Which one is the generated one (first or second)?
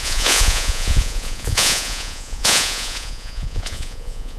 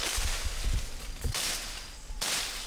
first